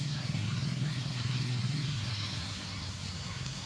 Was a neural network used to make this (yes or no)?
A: yes